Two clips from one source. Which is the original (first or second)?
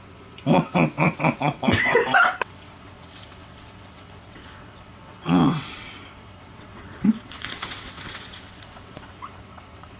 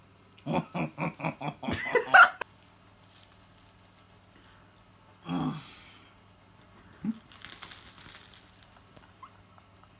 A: second